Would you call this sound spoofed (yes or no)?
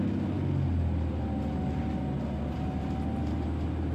no